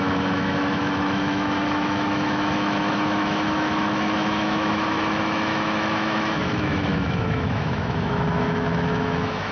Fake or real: fake